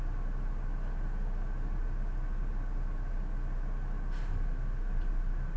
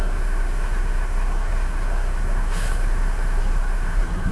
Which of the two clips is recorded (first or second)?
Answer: first